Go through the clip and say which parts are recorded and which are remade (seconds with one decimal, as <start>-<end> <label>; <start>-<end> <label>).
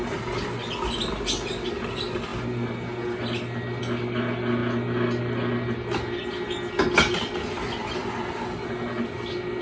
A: 0.0-9.6 recorded